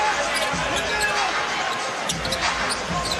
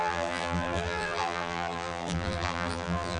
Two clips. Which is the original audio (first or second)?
first